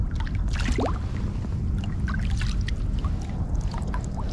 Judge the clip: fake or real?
real